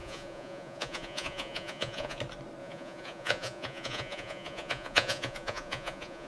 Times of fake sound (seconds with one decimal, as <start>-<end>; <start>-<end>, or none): 0.0-2.2; 2.6-6.3